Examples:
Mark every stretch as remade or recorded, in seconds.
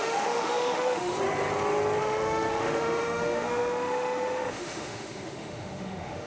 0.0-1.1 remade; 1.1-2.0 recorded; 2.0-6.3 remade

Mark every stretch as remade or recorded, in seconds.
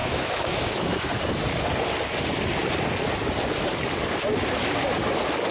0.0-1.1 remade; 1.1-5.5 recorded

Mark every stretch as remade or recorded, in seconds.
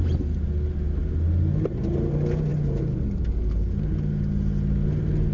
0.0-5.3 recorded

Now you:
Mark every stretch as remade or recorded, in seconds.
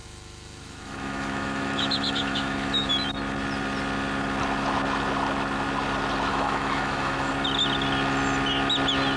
0.0-2.9 remade; 2.9-6.3 recorded; 6.3-7.3 remade; 7.3-9.2 recorded